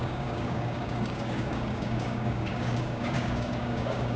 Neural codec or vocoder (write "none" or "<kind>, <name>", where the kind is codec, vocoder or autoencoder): codec, DAC